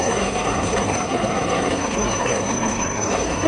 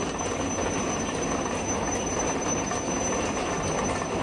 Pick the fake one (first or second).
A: first